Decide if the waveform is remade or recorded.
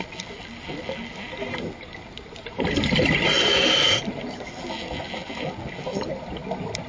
recorded